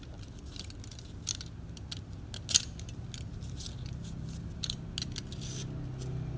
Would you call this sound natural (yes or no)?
yes